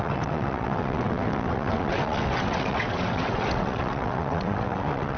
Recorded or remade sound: remade